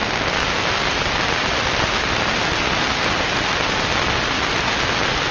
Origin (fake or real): real